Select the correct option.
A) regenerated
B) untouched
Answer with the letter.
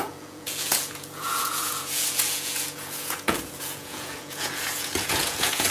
A